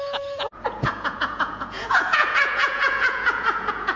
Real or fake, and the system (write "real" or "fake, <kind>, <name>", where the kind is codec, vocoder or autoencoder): fake, vocoder, Vocos